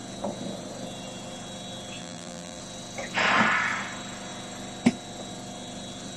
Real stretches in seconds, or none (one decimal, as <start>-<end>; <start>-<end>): 0.0-2.0; 2.6-6.2